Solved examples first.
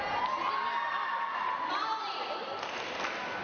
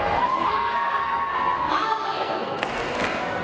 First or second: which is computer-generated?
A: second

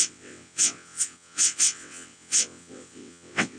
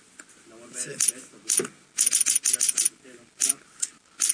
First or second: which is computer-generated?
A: first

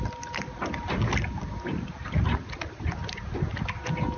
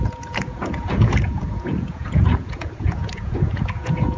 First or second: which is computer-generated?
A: second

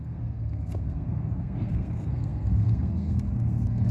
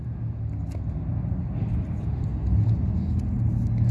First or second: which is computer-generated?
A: first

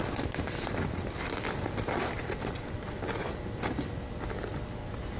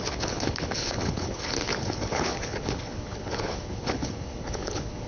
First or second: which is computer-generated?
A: second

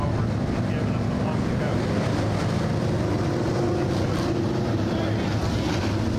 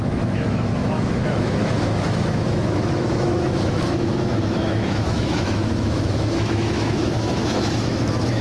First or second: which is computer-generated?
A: second